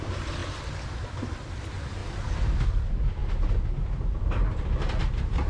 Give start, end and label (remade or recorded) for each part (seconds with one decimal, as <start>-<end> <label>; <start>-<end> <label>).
0.0-5.5 recorded